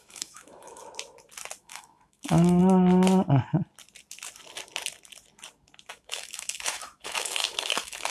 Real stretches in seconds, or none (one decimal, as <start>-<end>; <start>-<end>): 0.8-1.6; 2.6-5.9